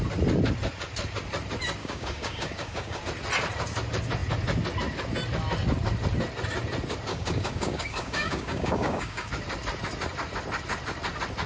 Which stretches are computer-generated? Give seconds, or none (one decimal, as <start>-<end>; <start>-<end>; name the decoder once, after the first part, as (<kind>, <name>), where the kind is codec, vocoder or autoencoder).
1.8-3.0 (codec, DAC); 7.1-9.3